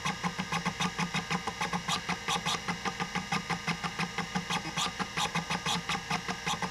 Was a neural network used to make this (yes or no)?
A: no